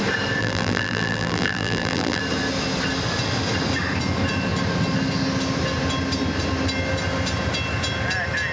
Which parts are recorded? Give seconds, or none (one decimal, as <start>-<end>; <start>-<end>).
0.0-0.4; 2.2-8.5